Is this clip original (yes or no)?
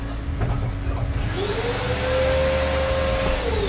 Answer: yes